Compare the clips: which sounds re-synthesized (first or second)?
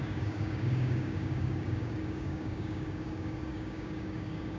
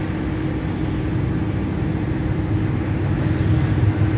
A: first